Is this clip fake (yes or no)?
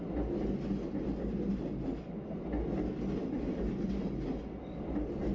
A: no